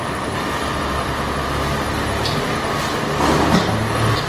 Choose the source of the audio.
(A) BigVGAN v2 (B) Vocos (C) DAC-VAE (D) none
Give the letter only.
D